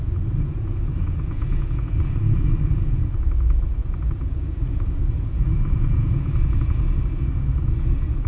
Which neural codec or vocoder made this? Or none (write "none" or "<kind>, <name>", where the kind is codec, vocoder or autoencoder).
vocoder, Vocos